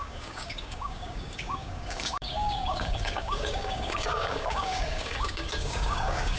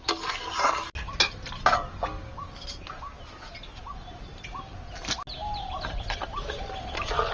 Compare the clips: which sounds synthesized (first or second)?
first